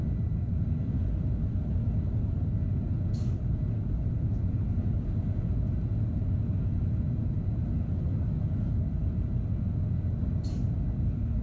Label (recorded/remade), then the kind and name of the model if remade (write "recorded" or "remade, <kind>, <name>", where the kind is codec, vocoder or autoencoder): recorded